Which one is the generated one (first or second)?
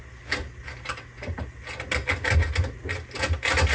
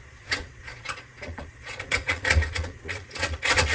second